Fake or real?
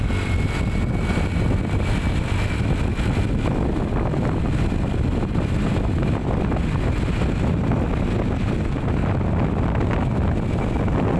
real